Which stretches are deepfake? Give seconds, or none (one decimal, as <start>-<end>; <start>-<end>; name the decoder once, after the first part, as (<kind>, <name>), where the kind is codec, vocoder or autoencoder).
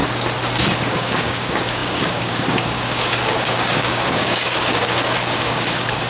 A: 0.6-6.1 (codec, DAC)